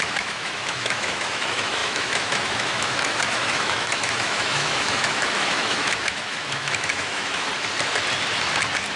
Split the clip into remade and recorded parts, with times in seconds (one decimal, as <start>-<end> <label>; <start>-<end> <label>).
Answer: 0.0-7.5 remade; 7.5-9.0 recorded